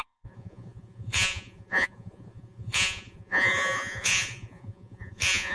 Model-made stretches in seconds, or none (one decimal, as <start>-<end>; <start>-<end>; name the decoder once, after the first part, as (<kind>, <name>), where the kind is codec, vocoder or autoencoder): 0.0-5.5 (vocoder, Vocos)